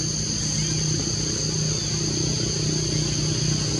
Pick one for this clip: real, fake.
real